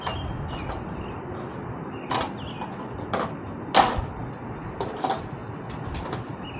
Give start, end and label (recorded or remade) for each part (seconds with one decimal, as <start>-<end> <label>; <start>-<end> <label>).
0.0-6.6 recorded